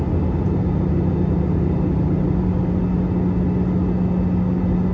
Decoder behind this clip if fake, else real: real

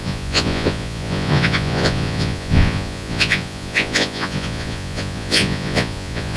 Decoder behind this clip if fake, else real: fake, vocoder, Vocos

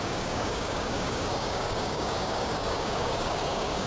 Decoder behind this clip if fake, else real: fake, codec, DAC